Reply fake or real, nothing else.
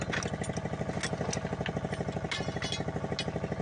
real